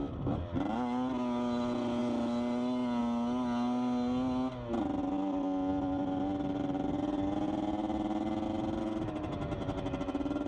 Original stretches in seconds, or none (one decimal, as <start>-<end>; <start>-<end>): 0.0-10.5

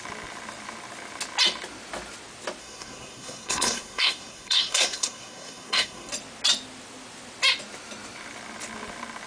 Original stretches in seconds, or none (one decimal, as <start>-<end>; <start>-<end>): 0.0-2.6; 6.1-9.3

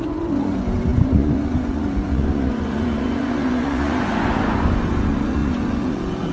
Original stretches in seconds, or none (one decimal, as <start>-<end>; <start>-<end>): none

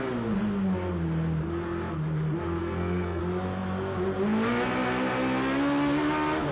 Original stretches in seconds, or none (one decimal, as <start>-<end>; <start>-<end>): 0.0-2.6; 3.2-6.5

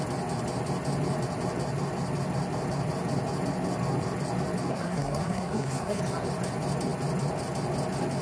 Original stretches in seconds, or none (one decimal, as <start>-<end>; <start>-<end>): 0.0-4.7; 6.0-8.2

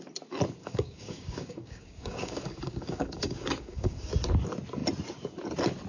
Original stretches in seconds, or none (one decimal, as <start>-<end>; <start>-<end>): 0.0-0.6; 4.1-5.9

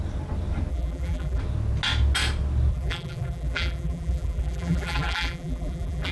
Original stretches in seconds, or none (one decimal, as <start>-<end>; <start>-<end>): 0.0-0.7; 1.4-2.7

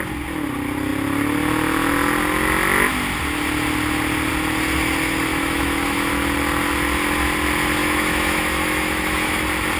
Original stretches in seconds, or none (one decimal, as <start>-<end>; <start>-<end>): 0.0-5.3; 6.1-7.8; 9.4-9.8